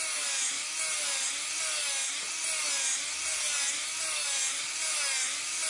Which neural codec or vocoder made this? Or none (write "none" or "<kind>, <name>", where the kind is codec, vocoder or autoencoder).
none